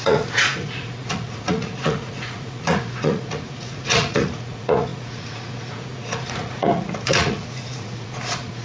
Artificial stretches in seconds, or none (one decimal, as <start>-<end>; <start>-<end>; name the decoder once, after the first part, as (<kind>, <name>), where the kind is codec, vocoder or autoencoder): 0.0-8.6 (vocoder, Vocos)